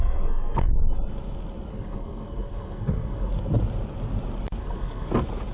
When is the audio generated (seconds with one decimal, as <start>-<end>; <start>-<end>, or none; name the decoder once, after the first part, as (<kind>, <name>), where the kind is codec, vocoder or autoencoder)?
0.0-0.7 (codec, SNAC); 1.7-3.3; 4.6-5.1